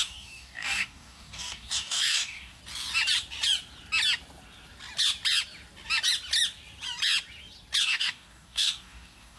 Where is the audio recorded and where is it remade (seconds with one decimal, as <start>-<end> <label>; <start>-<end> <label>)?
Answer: 0.0-2.6 remade; 2.6-7.8 recorded; 7.8-9.4 remade